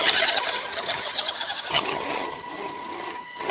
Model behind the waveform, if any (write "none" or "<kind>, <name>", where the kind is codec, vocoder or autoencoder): vocoder, HiFi-GAN